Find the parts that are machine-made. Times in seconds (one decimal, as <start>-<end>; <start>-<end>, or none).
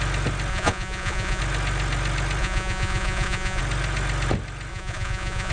0.5-1.4; 2.4-3.6; 4.7-5.5